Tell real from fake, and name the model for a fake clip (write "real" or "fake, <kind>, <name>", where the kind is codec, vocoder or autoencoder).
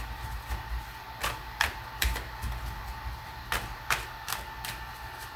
real